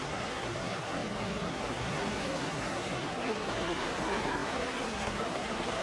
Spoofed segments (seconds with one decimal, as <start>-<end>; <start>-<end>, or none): 0.0-5.8